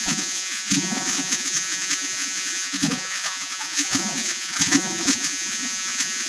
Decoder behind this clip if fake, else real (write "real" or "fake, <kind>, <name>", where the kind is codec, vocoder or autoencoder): fake, vocoder, Vocos